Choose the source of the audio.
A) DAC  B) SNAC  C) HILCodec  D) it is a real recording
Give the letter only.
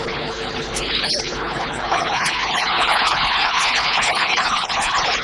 C